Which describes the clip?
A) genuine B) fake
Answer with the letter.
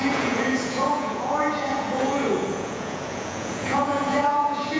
B